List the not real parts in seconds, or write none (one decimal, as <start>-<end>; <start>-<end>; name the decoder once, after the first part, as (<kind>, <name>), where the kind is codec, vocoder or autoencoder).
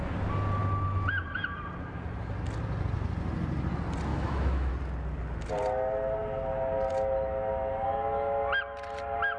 4.1-4.7 (autoencoder, DAC-VAE)